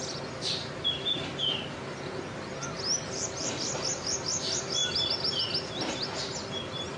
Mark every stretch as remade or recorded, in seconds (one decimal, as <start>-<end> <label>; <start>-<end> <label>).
0.0-7.0 recorded